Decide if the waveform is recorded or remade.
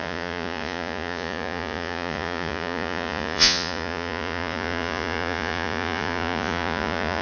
remade